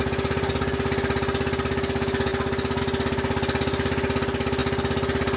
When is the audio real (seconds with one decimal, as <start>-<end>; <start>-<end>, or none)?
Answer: 0.0-5.4